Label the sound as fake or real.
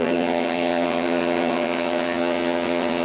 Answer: fake